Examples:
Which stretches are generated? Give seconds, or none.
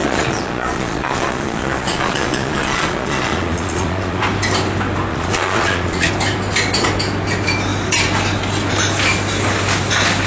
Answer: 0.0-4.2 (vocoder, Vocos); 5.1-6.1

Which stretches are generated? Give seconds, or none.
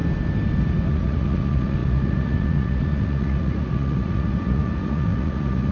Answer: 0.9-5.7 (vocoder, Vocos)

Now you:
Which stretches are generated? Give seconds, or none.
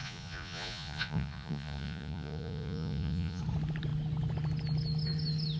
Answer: 0.0-3.4 (vocoder, Vocos)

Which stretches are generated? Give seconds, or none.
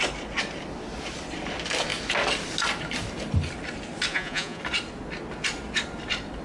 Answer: 4.1-4.6 (vocoder, Vocos)